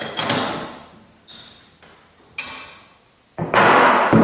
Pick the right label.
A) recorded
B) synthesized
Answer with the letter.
A